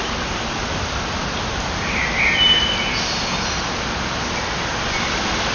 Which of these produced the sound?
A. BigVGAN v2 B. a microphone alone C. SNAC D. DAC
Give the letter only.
B